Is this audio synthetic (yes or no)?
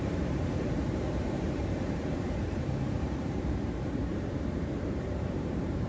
yes